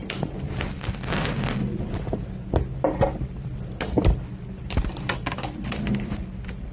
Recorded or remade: recorded